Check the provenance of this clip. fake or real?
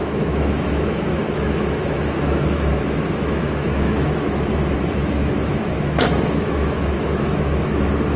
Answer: fake